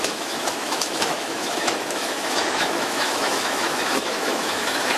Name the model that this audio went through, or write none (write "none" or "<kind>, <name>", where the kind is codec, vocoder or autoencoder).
autoencoder, DAC-VAE